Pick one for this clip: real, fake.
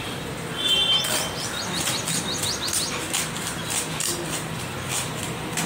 real